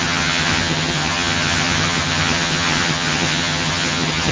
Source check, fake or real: fake